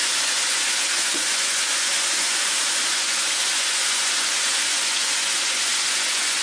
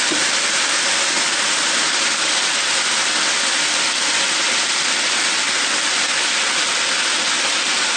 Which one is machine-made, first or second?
first